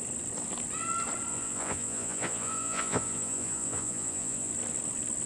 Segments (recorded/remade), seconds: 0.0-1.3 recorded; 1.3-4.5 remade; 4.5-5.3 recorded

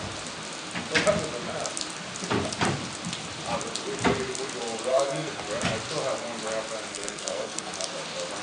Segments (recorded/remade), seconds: 0.0-4.9 recorded; 4.9-5.4 remade; 5.4-6.9 recorded; 6.9-7.7 remade; 7.7-8.4 recorded